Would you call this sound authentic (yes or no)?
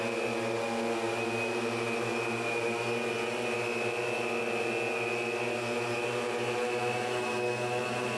yes